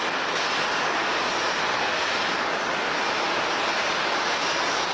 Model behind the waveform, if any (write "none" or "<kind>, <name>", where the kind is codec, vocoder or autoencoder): none